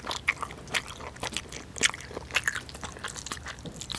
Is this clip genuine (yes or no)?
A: yes